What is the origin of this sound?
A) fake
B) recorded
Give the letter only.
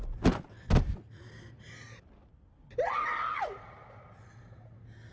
B